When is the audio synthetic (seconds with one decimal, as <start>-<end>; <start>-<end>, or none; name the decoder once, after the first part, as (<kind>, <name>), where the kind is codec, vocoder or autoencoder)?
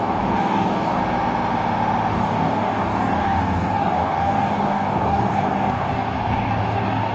0.0-1.0 (codec, DAC); 2.1-7.1